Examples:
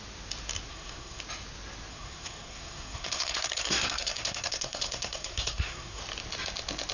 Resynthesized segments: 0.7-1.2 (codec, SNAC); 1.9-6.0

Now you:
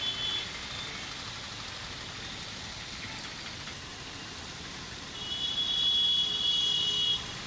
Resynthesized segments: none

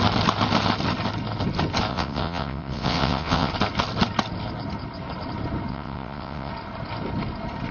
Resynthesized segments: 1.9-3.5 (vocoder, WaveNeXt); 5.7-6.5

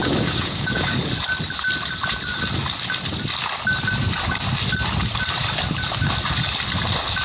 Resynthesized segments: 0.0-1.0 (codec, DAC)

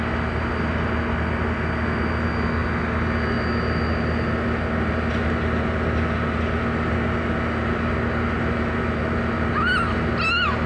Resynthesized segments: none

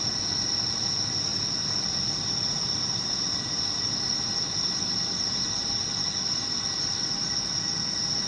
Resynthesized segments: none